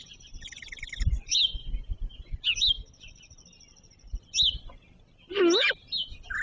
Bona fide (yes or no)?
yes